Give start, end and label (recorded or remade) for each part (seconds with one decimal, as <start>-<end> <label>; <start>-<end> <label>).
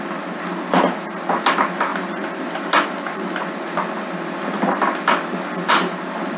0.0-6.4 recorded